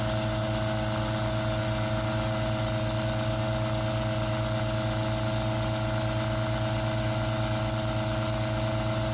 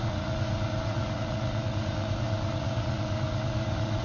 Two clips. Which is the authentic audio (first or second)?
first